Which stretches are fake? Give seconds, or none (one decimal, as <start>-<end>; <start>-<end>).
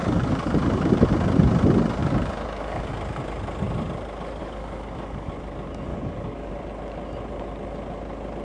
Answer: 0.0-0.9; 2.0-2.9; 4.4-5.3; 5.9-6.5